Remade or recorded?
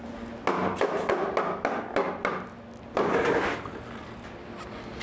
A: recorded